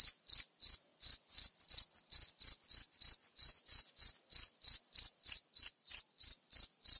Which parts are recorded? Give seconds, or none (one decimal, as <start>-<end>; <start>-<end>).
0.0-0.9; 1.5-3.2; 4.1-7.0